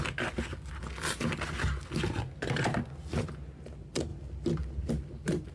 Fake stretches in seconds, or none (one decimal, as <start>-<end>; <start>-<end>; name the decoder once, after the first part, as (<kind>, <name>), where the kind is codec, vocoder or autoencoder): none